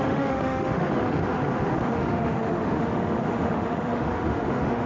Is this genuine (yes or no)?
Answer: no